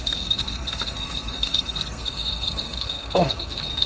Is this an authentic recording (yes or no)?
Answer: no